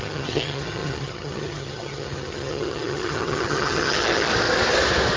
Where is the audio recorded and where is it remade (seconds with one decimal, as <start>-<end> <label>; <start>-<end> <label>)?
0.0-4.3 remade; 4.3-5.2 recorded